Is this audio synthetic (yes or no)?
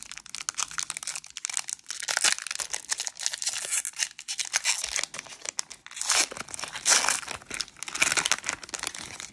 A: no